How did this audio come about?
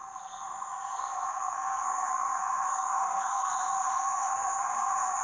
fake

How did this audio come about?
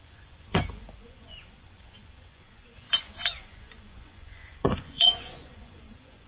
fake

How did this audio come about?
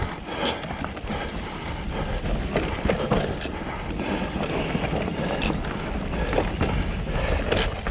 real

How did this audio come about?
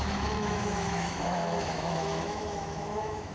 fake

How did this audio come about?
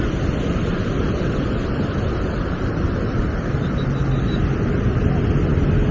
real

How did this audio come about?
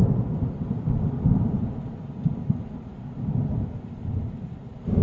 real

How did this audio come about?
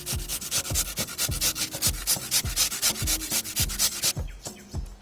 real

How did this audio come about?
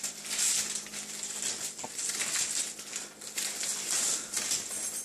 real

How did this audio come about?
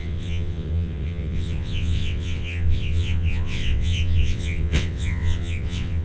fake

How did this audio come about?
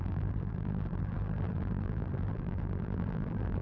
fake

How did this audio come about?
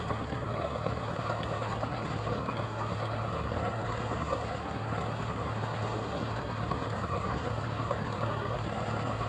fake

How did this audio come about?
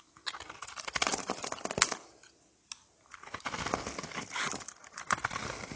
real